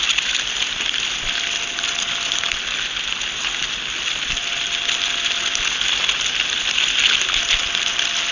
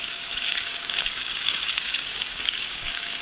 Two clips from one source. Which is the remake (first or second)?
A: second